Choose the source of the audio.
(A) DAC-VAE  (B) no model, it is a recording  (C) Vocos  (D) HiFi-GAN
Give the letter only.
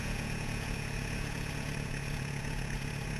C